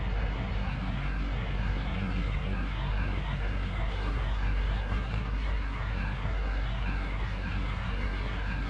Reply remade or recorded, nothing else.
remade